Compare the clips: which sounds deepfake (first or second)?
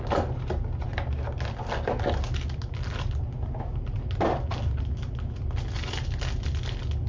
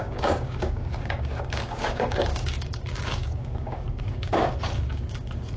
second